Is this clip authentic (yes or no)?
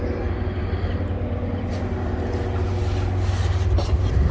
yes